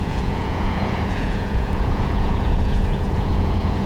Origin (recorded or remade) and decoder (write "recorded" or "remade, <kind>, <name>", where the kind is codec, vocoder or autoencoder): remade, vocoder, Vocos